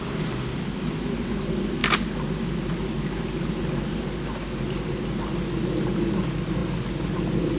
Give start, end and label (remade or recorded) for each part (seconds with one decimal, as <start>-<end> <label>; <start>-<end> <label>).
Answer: 0.0-7.6 recorded